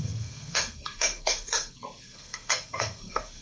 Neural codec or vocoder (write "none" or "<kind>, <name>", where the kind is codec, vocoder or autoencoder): codec, SNAC